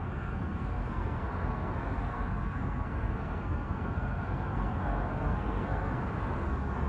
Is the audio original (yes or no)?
no